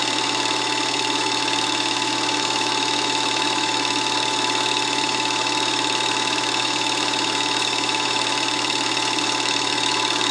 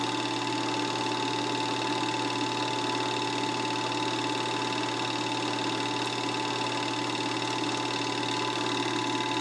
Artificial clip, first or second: first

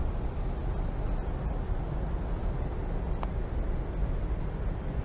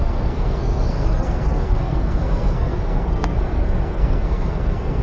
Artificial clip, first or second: second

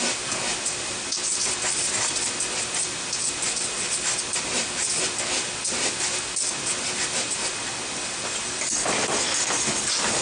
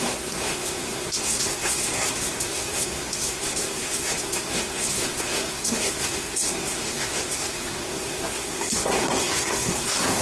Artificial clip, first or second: second